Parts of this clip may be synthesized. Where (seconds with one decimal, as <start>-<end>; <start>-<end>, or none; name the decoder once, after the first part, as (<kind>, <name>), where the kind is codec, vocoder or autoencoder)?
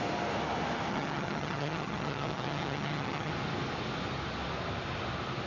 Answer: 0.9-3.3 (vocoder, HiFi-GAN)